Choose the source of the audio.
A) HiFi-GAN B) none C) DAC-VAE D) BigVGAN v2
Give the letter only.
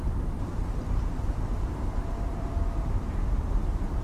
D